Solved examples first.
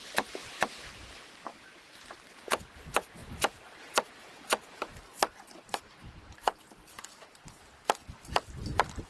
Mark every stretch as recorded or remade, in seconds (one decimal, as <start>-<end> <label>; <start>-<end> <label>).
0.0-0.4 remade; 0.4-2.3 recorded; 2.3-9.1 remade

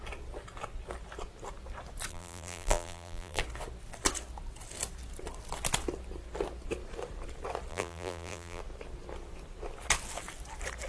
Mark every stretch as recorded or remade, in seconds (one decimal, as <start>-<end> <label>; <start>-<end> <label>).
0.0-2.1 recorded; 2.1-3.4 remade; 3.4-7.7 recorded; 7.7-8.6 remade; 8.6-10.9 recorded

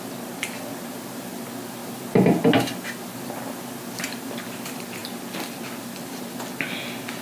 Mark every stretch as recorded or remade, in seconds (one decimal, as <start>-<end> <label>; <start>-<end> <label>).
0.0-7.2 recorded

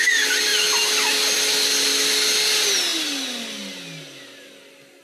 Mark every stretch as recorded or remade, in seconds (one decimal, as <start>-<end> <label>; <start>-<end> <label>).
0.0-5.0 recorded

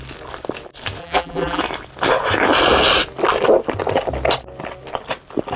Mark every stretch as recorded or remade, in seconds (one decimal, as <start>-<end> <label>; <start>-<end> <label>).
0.0-1.0 recorded; 1.0-1.6 remade; 1.6-5.6 recorded

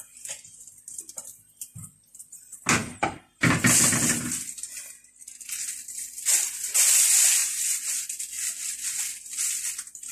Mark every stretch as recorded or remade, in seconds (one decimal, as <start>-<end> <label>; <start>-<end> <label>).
0.0-7.4 recorded; 7.4-8.2 remade; 8.2-10.1 recorded

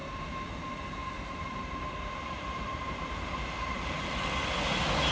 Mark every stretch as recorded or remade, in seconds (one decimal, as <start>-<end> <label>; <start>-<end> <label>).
0.0-0.5 remade; 0.5-1.0 recorded; 1.0-4.1 remade; 4.1-5.1 recorded

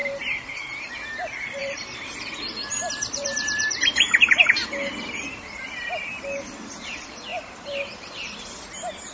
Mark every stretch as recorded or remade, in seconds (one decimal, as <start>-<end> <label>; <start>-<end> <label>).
0.0-0.9 remade; 0.9-1.6 recorded; 1.6-6.0 remade; 6.0-7.3 recorded; 7.3-8.7 remade; 8.7-9.1 recorded